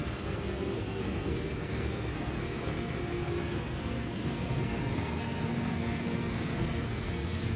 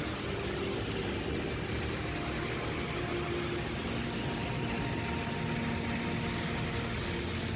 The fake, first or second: first